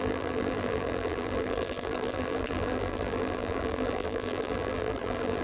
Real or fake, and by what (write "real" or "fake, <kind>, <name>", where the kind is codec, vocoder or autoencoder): fake, vocoder, BigVGAN v2